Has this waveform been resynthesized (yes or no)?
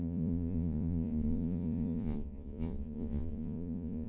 yes